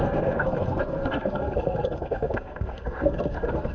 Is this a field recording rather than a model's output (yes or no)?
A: no